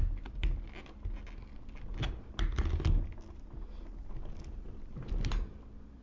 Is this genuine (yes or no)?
yes